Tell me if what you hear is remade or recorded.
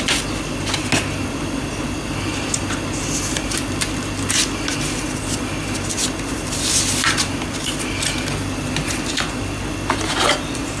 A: recorded